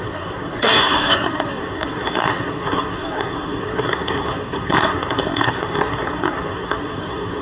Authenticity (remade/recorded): remade